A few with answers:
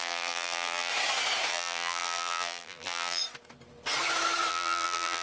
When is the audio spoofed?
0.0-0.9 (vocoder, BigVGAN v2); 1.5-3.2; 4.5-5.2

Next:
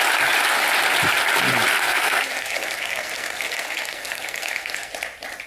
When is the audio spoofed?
1.8-4.9 (codec, SNAC)